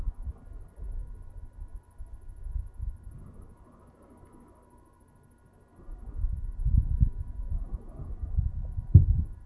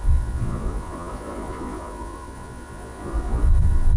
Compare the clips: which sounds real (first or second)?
first